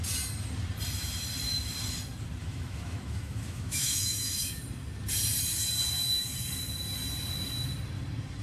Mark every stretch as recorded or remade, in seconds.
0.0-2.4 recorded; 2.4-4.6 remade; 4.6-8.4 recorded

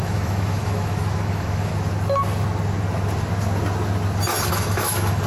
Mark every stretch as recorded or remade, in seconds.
0.0-1.7 remade; 1.7-4.5 recorded; 4.5-5.3 remade

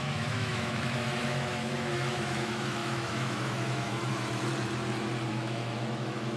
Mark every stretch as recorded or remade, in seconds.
0.0-4.5 remade; 4.5-5.3 recorded; 5.3-6.4 remade